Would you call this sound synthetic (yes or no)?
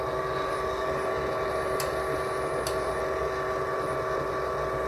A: no